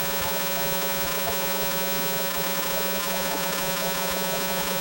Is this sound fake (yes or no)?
yes